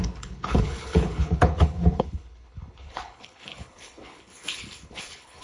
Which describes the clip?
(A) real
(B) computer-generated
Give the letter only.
B